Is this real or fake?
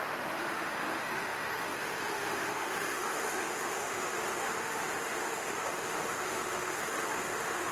fake